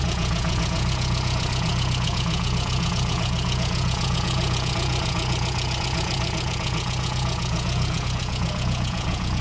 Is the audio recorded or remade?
remade